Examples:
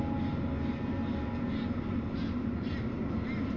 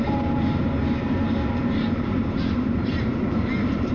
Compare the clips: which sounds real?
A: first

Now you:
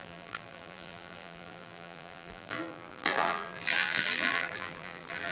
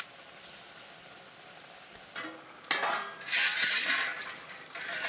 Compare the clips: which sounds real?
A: second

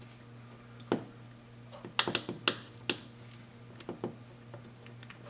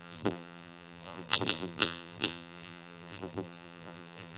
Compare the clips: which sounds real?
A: first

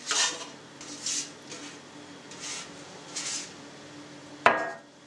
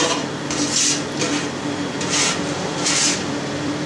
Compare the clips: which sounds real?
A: first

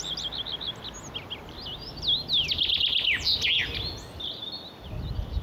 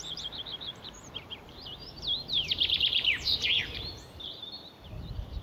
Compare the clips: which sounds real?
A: first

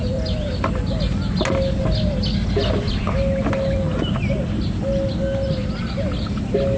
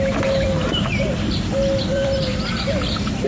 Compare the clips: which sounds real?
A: first